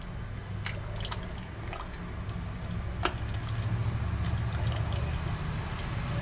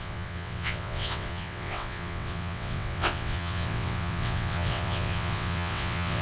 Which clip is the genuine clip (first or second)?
first